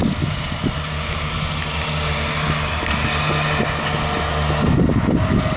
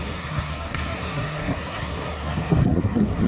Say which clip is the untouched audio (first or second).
first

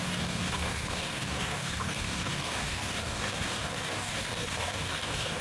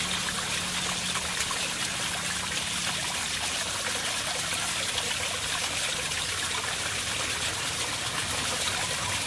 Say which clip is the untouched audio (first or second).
second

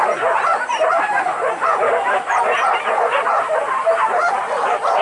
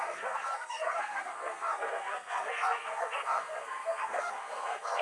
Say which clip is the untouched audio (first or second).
first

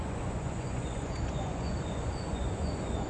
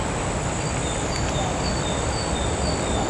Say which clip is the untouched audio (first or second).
second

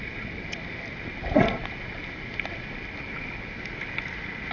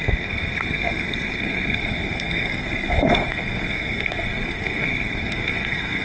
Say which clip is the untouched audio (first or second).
first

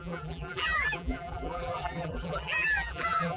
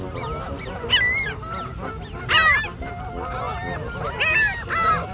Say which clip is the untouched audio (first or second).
second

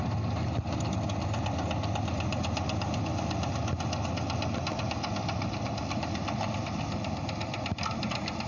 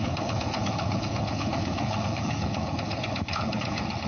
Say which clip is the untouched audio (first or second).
first